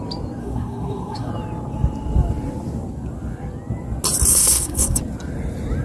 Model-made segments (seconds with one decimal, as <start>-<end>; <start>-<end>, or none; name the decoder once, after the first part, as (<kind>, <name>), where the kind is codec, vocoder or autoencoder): 0.4-1.3 (codec, SNAC); 4.3-5.0